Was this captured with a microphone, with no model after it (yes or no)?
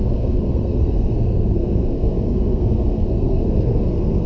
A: no